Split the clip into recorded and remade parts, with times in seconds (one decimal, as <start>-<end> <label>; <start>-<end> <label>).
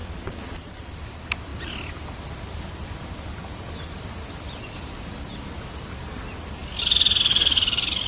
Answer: 0.0-0.9 remade; 0.9-8.1 recorded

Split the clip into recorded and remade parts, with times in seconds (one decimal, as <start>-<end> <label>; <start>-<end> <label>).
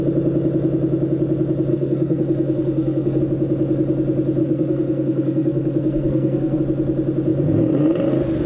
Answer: 0.0-1.7 recorded; 1.7-3.2 remade; 3.2-4.4 recorded; 4.4-6.6 remade; 6.6-8.5 recorded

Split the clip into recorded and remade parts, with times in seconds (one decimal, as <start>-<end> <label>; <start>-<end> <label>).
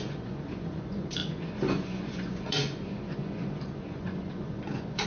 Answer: 0.0-5.1 remade